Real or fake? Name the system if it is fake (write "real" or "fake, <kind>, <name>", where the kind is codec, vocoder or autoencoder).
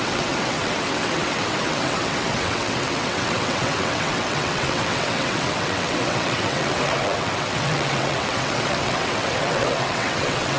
fake, vocoder, WaveNeXt